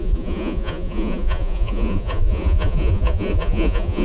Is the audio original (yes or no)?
no